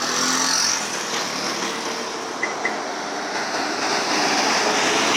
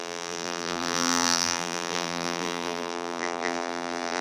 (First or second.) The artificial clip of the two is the second